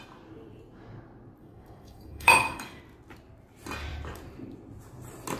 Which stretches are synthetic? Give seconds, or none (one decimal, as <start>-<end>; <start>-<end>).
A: 1.4-2.8